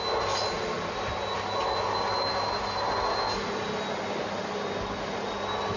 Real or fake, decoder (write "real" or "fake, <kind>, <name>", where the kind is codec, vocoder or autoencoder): real